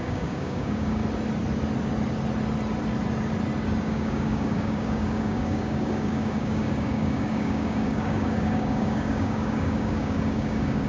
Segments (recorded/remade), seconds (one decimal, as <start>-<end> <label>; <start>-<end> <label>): 0.0-1.0 remade; 1.0-3.8 recorded; 3.8-10.9 remade